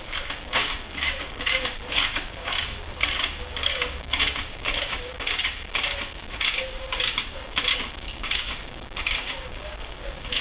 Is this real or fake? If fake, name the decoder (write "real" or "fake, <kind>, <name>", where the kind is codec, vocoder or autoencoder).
fake, codec, DAC